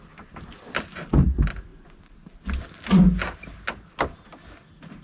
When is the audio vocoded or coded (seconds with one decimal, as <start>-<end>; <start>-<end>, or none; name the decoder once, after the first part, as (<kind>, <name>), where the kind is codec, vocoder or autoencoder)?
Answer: none